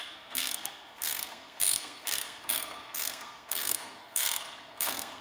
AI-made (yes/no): yes